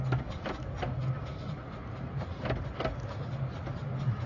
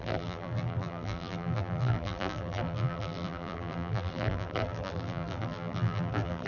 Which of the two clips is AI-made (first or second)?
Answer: second